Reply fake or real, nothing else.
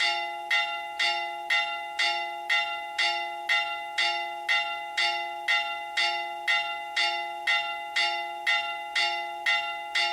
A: real